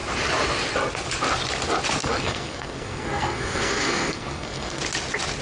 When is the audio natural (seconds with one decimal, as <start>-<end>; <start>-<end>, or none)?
0.0-2.0; 4.8-5.4